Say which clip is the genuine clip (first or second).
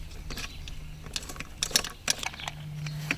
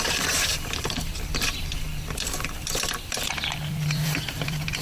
first